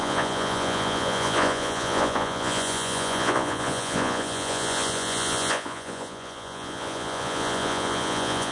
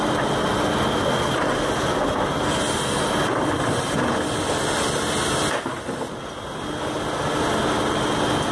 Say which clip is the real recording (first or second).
second